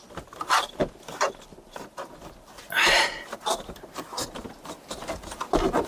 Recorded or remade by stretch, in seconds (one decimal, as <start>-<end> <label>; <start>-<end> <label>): 0.0-5.9 recorded